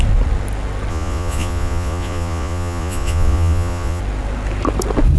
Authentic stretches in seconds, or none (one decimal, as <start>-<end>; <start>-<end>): 0.0-0.9; 4.0-5.2